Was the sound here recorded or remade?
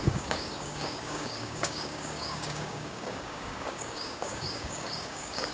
remade